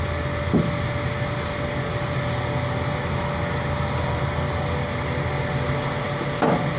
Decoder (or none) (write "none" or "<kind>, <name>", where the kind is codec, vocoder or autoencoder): none